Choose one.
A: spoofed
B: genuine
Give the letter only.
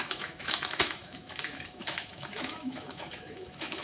A